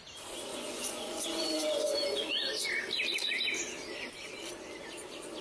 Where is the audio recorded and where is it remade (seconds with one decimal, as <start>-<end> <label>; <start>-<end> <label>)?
0.0-0.5 recorded; 0.5-2.5 remade; 2.5-5.4 recorded